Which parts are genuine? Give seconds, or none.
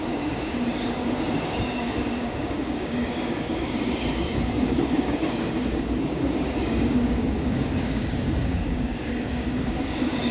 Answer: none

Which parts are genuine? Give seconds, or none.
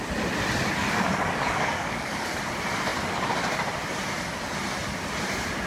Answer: 0.0-0.8; 2.4-5.7